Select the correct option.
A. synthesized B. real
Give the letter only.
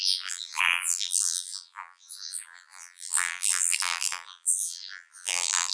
A